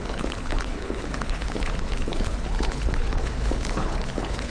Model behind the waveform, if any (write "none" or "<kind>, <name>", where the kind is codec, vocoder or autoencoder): codec, HILCodec